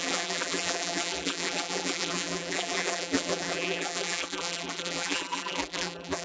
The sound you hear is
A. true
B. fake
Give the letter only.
B